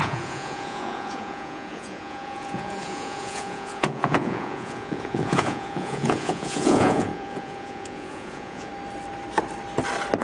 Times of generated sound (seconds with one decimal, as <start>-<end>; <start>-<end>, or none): 0.0-8.7